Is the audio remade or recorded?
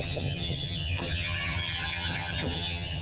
remade